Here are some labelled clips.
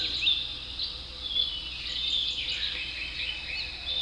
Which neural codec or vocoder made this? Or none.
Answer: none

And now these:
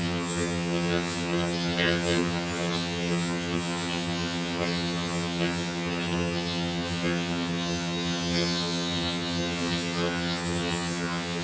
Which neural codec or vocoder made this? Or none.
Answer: vocoder, HiFi-GAN